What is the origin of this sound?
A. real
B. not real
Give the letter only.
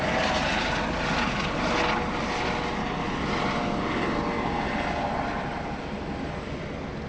A